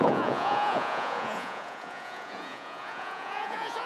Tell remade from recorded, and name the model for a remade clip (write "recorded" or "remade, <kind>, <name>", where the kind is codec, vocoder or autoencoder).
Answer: remade, vocoder, Vocos